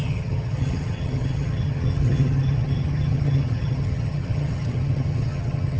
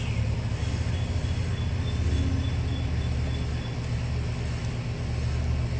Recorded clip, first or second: second